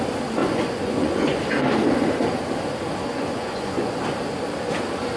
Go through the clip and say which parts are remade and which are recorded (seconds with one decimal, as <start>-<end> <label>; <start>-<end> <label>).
0.0-0.4 recorded; 0.4-1.4 remade; 1.4-3.1 recorded; 3.1-4.0 remade; 4.0-5.2 recorded